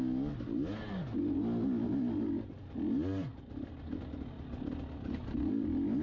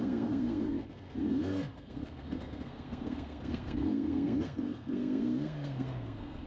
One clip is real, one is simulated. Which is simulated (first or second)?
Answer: second